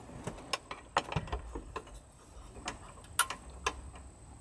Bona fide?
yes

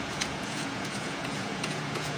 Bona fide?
no